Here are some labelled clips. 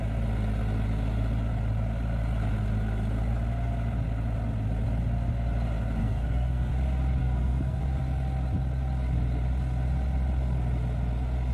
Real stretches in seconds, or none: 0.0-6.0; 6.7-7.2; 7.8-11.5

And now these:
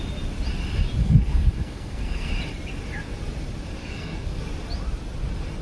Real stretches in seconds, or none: 0.0-1.0; 2.3-3.8; 4.4-5.6

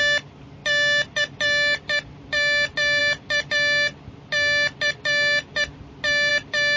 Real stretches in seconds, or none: 0.0-6.8

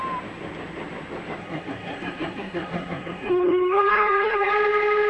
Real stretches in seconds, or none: 0.0-1.4; 4.5-5.1

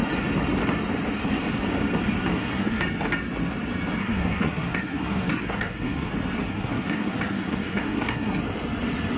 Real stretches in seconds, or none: 0.0-2.3; 2.8-4.0; 6.1-6.5; 8.4-9.2